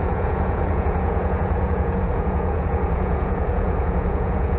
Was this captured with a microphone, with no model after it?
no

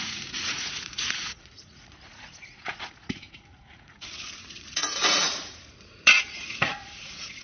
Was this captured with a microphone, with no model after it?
no